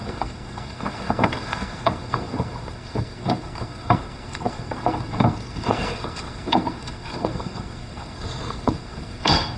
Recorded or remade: remade